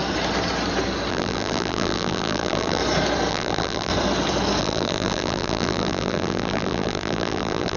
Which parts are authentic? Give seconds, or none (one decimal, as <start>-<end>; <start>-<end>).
0.0-1.1; 2.8-3.3; 3.9-4.6